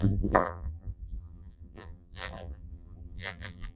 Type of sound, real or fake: fake